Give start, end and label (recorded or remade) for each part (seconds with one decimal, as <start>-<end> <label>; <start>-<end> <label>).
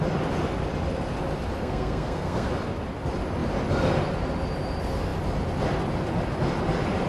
0.0-1.6 recorded; 1.6-2.5 remade; 2.5-7.1 recorded